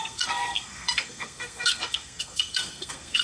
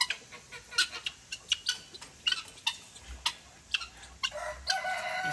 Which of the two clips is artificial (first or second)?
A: first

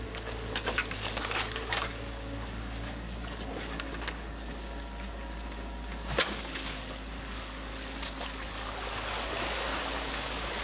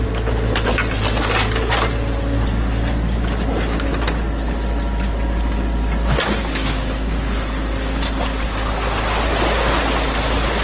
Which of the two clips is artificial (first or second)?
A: first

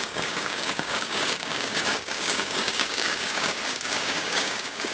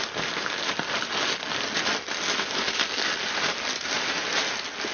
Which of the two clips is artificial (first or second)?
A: first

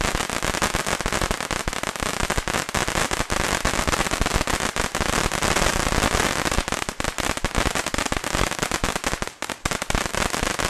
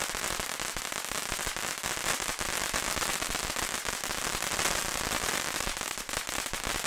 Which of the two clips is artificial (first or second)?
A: second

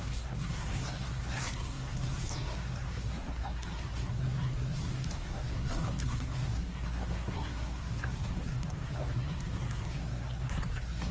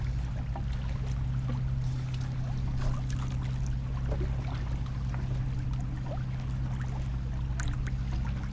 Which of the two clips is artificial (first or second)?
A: first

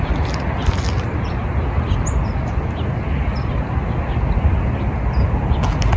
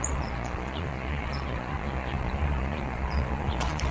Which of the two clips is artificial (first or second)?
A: second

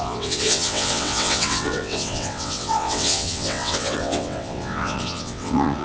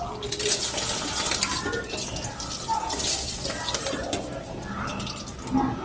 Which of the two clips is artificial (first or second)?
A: first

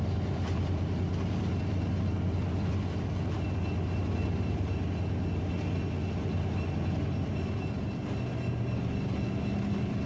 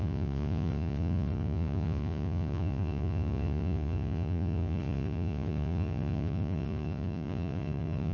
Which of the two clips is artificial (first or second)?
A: second